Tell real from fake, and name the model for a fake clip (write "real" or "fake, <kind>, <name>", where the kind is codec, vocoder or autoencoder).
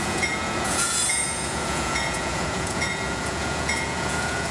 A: fake, vocoder, Vocos